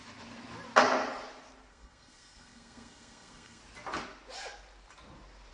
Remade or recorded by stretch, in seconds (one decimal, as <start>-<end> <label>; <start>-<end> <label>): 0.0-1.7 recorded; 1.7-3.6 remade; 3.6-5.5 recorded